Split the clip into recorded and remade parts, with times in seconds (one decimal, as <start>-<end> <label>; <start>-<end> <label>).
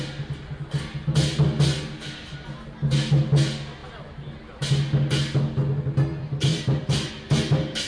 0.0-6.5 recorded; 6.5-7.1 remade; 7.1-7.9 recorded